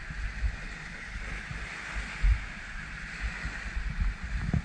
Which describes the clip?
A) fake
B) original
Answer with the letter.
B